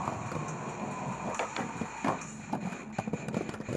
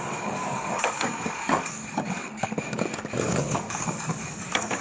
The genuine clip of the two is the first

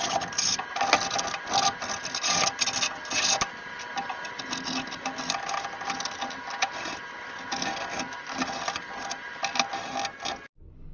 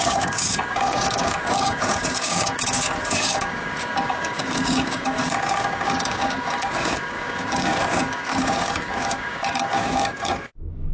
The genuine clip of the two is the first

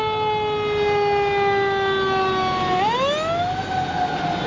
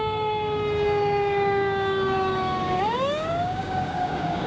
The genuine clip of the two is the first